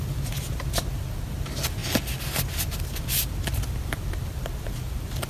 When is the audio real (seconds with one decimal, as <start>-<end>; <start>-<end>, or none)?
0.0-5.3